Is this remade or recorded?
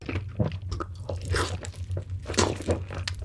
recorded